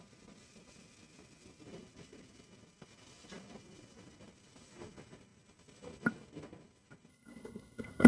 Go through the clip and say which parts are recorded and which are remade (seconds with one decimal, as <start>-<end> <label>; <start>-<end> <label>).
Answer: 0.0-7.1 recorded; 7.1-8.1 remade